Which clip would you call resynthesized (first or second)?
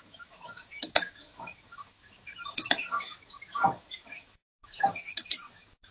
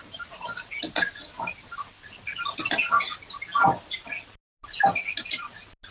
first